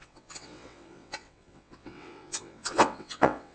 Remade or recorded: remade